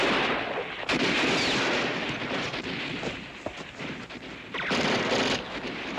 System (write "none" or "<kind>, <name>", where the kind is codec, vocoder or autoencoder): none